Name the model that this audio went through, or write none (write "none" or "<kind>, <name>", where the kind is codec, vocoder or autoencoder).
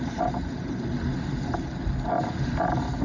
none